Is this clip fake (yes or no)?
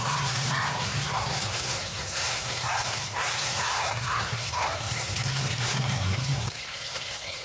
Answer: yes